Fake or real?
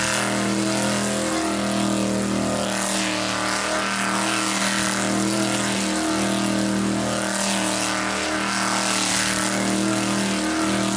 real